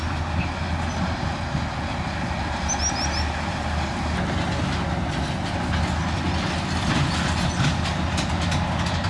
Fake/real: real